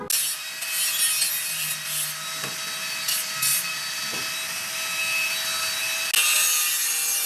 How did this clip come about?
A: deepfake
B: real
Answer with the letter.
B